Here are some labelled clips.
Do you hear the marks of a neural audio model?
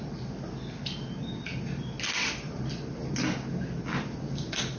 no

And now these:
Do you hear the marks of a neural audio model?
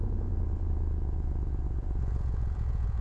yes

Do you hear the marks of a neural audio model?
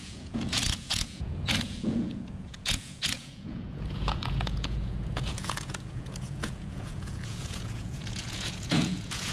yes